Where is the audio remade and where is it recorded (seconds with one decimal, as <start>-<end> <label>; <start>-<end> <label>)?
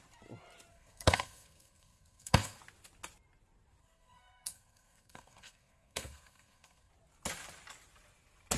0.0-0.7 recorded; 0.7-2.6 remade; 2.6-3.8 recorded; 3.8-6.9 remade; 6.9-8.6 recorded